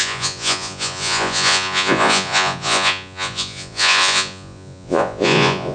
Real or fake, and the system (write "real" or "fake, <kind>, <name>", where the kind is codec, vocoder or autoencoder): fake, vocoder, Vocos